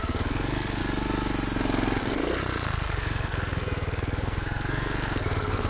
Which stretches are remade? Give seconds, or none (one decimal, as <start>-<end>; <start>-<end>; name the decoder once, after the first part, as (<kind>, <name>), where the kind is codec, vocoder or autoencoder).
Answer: 0.0-0.8 (codec, SNAC); 2.0-5.7